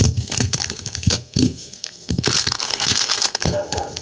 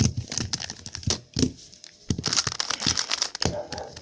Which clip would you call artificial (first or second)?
first